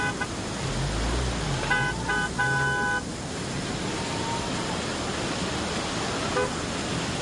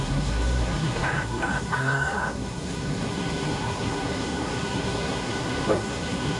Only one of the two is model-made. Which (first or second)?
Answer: second